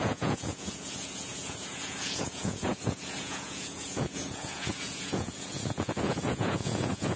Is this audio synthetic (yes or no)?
yes